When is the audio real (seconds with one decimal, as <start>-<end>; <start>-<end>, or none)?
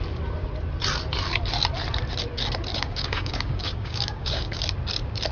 0.0-2.7; 4.6-5.3